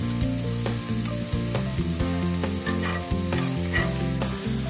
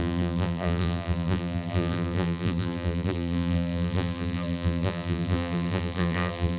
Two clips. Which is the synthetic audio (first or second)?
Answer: second